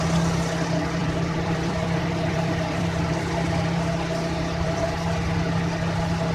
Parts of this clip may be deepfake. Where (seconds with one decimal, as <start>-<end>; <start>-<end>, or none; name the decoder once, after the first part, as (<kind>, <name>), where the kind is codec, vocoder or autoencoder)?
1.0-4.8 (vocoder, BigVGAN v2)